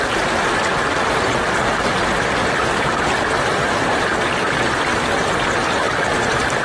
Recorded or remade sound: recorded